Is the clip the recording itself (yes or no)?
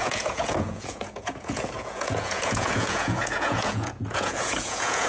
no